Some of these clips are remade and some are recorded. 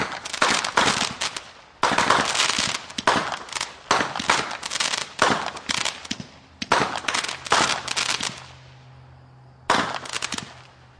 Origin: recorded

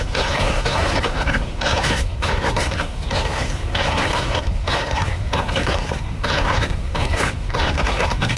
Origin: remade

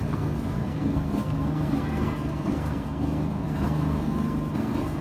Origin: remade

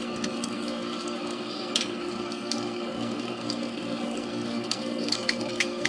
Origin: remade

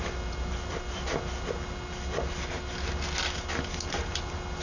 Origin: recorded